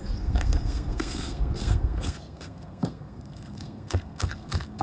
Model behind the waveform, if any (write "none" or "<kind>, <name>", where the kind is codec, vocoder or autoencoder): codec, SNAC